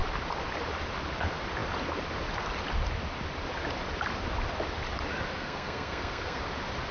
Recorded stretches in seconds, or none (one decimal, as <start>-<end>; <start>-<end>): 0.0-5.3; 6.4-6.9